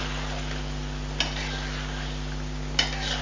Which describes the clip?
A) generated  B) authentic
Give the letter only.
B